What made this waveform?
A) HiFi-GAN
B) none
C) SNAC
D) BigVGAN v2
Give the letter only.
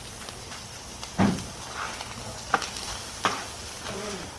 D